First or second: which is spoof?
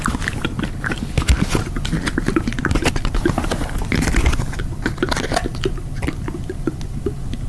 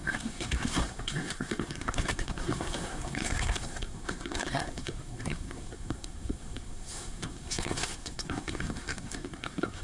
second